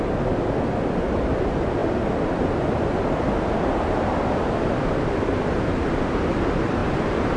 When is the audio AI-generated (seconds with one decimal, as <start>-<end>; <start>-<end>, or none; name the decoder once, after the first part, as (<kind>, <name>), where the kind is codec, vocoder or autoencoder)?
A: none